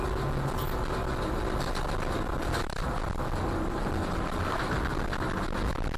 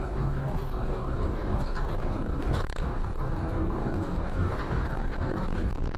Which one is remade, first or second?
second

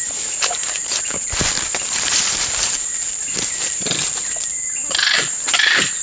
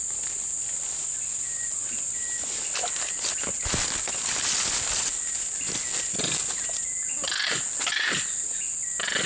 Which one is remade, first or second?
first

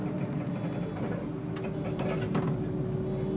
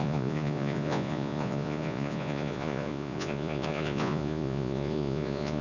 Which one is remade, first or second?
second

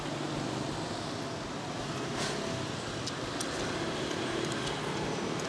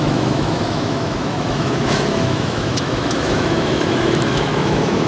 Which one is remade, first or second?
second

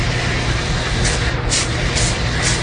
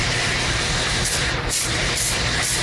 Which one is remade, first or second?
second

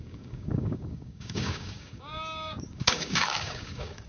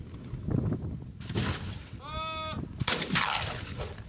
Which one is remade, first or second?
first